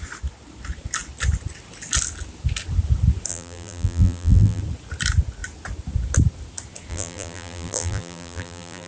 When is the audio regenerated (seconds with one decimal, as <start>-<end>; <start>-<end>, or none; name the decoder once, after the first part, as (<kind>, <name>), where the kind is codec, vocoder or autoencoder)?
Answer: 3.3-4.6 (vocoder, BigVGAN v2); 6.9-8.9